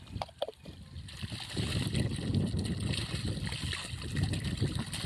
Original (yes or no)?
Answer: yes